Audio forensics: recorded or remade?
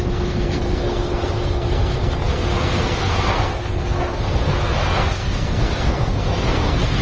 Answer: remade